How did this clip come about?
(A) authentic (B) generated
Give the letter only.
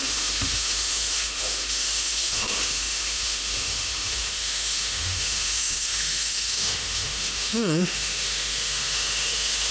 B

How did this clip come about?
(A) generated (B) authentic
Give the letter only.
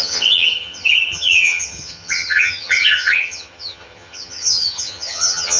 A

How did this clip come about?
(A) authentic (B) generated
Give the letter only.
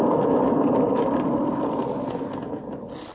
A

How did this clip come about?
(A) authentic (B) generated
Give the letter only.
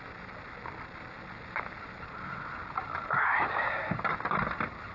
A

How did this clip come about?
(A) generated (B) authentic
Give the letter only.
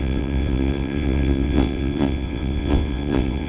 A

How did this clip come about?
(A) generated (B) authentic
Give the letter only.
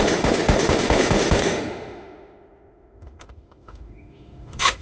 A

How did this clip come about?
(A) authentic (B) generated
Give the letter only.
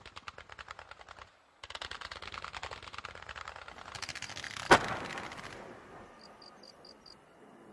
A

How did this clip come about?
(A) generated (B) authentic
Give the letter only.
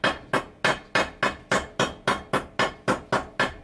B